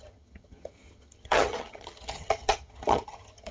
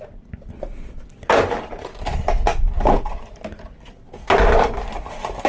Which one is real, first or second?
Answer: second